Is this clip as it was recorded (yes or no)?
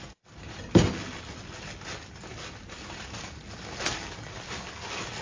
yes